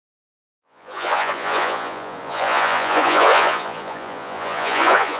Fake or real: fake